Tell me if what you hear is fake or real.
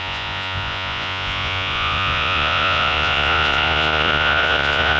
fake